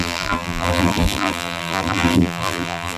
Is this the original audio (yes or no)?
no